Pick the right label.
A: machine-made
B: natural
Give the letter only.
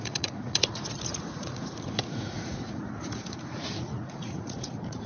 A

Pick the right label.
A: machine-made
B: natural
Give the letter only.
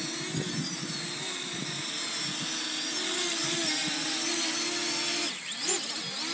B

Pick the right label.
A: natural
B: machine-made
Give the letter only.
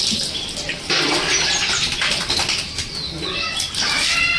A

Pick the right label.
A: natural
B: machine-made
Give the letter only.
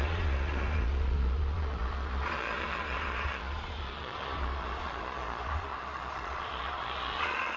B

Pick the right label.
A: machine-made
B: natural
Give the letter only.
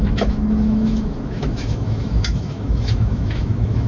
A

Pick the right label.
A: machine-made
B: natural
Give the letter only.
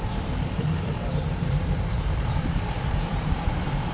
A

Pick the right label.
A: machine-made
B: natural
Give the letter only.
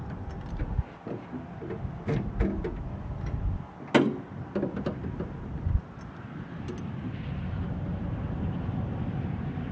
B